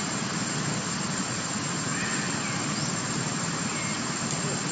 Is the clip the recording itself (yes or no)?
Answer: yes